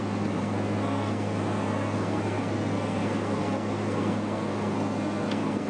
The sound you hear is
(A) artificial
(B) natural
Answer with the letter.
A